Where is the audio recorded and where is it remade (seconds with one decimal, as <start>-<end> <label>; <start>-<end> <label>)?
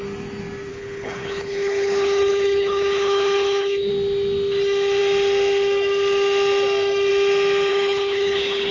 0.0-0.7 recorded; 0.7-3.9 remade; 3.9-7.7 recorded; 7.7-8.7 remade